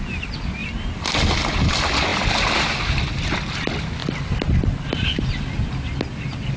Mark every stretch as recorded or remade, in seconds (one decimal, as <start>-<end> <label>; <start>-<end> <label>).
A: 0.0-6.6 recorded